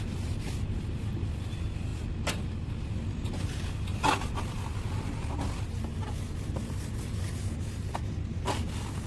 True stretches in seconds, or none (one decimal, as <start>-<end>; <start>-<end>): 0.0-9.1